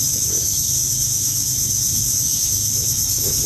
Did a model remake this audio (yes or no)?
yes